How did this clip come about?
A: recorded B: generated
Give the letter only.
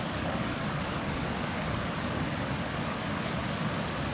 B